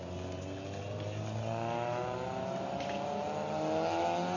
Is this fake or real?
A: real